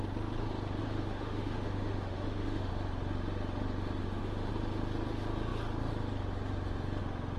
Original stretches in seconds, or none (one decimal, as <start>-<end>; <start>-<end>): 0.0-0.8; 2.7-4.0; 4.5-7.4